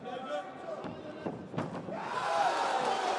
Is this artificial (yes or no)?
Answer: no